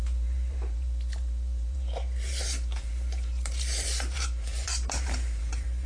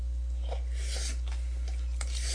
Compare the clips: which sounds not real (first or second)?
first